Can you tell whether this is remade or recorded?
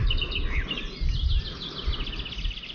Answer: recorded